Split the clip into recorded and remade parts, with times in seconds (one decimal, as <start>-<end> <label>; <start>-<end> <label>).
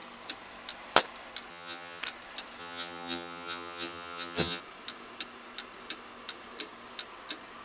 0.0-1.5 recorded; 1.5-2.0 remade; 2.0-2.6 recorded; 2.6-4.6 remade; 4.6-7.6 recorded